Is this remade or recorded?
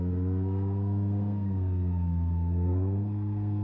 remade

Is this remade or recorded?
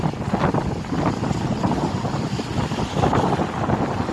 recorded